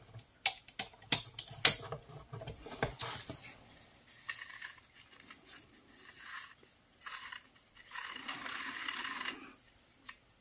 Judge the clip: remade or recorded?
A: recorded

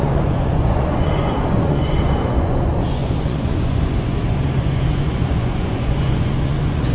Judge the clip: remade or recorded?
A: remade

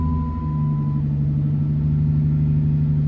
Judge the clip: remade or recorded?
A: recorded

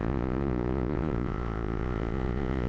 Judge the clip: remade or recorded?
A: remade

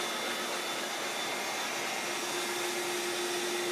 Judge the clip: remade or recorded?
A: recorded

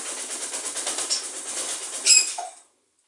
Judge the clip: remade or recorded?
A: recorded